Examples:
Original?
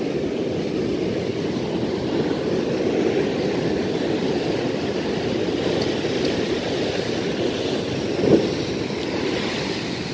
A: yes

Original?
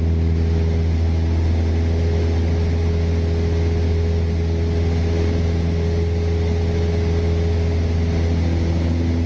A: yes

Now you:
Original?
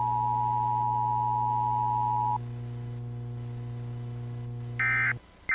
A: yes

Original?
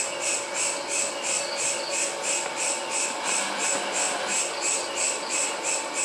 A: yes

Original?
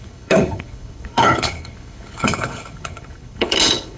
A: no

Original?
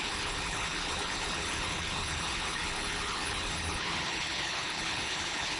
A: no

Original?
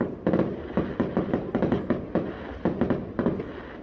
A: yes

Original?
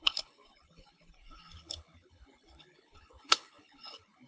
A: no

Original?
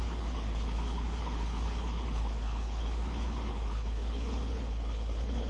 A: no